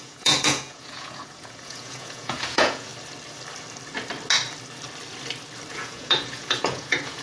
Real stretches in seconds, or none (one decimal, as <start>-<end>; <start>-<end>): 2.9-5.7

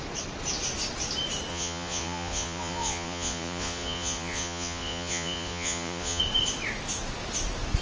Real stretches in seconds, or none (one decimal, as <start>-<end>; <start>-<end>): 0.0-1.5; 6.2-7.8

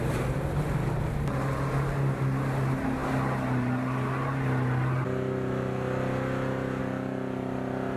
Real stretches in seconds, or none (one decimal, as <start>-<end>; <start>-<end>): 0.0-8.0

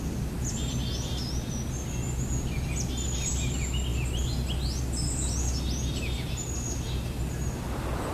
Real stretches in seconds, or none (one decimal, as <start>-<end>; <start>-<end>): 0.0-8.1

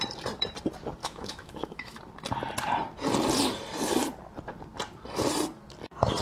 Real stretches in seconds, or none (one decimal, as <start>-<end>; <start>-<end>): 0.0-1.0; 2.0-6.2

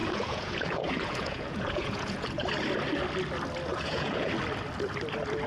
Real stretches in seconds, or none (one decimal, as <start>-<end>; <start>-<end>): 2.4-3.7; 4.3-5.5

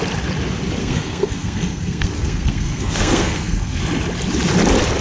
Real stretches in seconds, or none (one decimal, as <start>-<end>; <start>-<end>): 0.0-0.8; 3.8-5.0